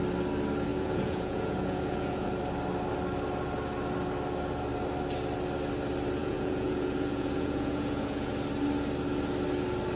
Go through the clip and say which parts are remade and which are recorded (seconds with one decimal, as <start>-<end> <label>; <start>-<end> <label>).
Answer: 0.0-0.7 recorded; 0.7-2.4 remade; 2.4-6.2 recorded; 6.2-8.3 remade; 8.3-10.0 recorded